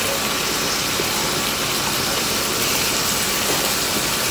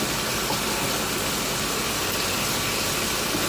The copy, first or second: first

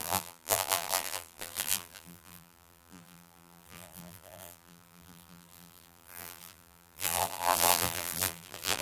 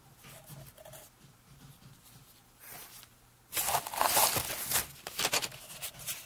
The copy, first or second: first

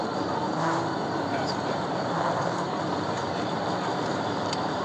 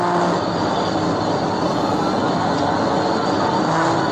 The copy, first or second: first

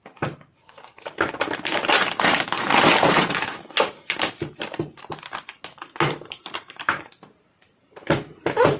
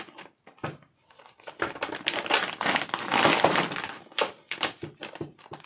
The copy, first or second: first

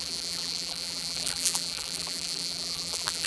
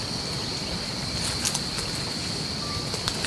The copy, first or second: first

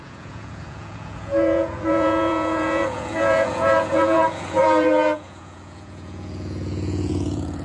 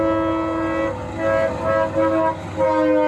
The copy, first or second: first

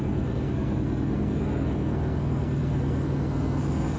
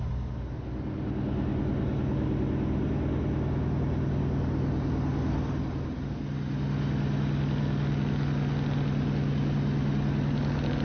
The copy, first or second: first